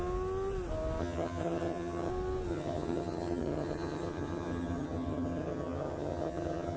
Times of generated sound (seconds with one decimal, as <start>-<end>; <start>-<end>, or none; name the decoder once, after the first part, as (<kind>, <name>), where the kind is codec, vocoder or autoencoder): 1.0-2.1 (vocoder, HiFi-GAN); 2.5-6.8